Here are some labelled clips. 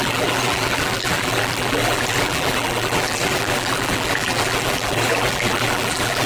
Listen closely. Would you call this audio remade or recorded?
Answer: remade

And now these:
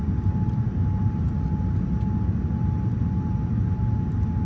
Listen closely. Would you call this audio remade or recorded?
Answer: recorded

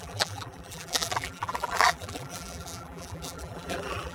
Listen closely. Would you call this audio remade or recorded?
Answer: remade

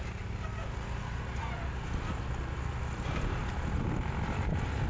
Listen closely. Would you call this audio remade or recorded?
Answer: recorded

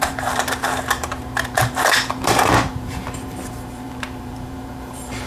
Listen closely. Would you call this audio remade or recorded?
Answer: remade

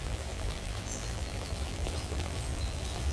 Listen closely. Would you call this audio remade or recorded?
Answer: remade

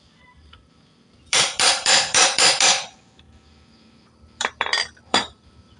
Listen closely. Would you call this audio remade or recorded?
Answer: remade